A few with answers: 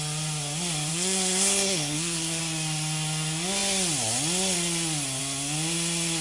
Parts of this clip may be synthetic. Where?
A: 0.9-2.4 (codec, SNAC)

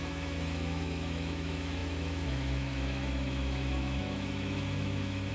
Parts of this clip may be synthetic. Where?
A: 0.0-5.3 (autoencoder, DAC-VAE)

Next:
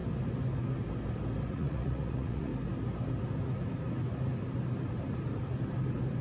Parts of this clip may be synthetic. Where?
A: 1.5-2.5 (vocoder, Vocos)

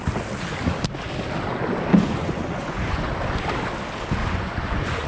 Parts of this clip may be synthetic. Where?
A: 1.9-3.0 (vocoder, Vocos); 4.2-5.1

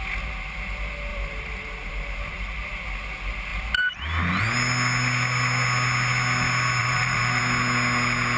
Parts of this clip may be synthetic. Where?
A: 1.1-2.5 (vocoder, BigVGAN v2); 6.8-7.4

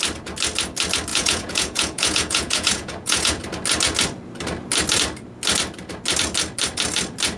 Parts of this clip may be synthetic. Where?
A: 1.1-3.4 (vocoder, Vocos)